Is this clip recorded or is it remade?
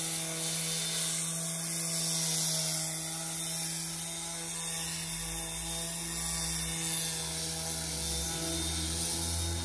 recorded